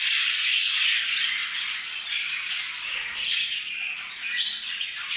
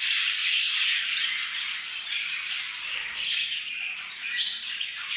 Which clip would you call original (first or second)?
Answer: first